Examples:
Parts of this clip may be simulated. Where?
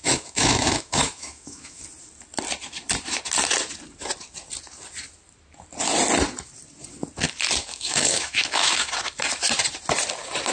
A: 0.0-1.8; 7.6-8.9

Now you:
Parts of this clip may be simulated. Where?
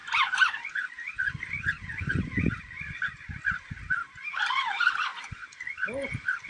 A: none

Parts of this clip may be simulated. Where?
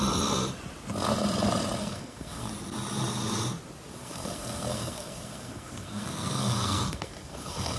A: 1.8-2.5; 4.0-7.8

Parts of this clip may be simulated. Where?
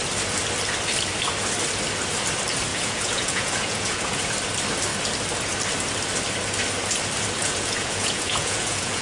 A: 2.7-4.3; 7.4-9.0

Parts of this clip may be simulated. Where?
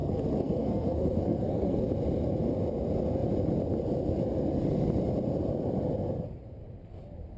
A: 0.0-1.9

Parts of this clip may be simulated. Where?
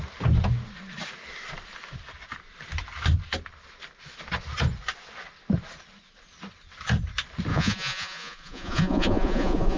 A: 7.5-9.8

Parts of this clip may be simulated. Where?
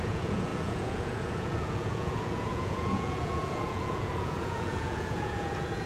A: 0.0-5.9